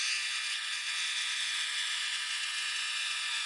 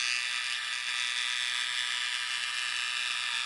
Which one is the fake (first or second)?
first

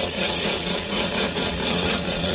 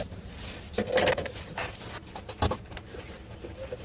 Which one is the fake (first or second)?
first